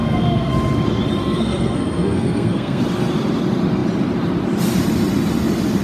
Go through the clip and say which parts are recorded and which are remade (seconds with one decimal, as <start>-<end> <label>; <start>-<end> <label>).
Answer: 0.0-0.5 remade; 0.5-1.2 recorded; 1.2-2.8 remade; 2.8-5.8 recorded